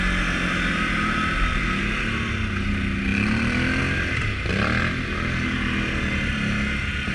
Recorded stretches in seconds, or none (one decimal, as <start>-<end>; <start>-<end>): 0.0-7.1